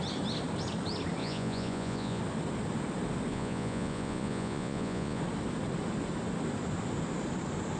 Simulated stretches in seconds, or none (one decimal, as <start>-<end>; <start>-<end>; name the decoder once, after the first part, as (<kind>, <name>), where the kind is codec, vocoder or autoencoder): 1.2-2.2 (vocoder, Vocos); 3.3-5.2